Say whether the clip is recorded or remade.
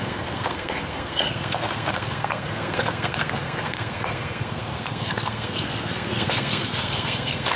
remade